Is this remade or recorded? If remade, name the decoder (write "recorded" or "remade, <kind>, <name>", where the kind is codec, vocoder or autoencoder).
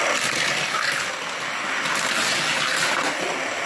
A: recorded